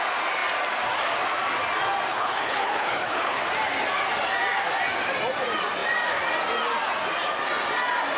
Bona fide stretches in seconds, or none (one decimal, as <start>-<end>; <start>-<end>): 0.0-2.1; 3.4-8.2